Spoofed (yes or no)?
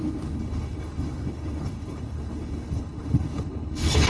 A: yes